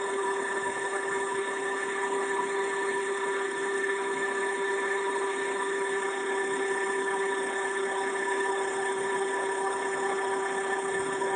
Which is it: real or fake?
fake